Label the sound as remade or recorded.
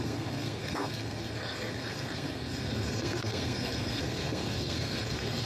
remade